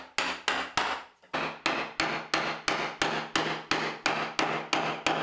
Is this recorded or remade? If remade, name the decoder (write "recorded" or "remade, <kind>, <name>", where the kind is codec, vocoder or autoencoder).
recorded